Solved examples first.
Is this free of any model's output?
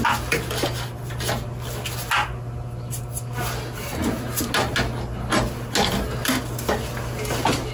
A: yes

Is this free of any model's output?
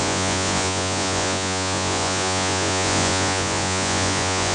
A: no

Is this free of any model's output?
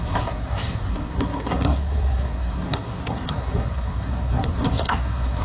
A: no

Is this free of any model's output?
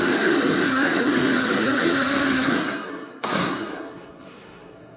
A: no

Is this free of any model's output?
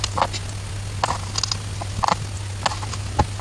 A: yes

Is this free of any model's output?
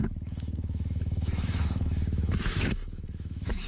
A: no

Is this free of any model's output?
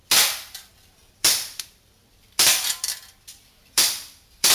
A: no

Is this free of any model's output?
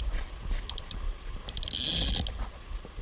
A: yes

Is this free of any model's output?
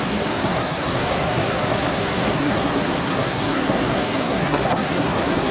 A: no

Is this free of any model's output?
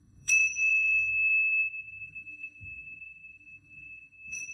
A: no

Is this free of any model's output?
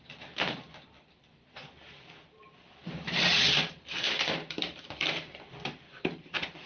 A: no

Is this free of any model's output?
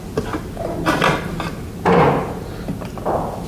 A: yes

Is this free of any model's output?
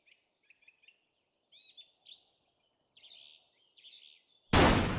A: yes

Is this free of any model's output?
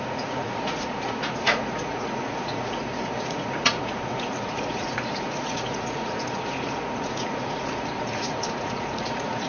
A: no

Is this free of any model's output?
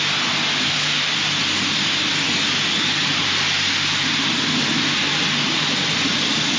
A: yes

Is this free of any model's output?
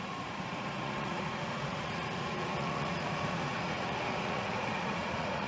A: no